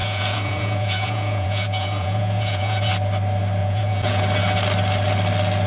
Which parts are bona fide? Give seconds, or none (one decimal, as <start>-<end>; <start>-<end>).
2.9-3.6; 4.2-5.7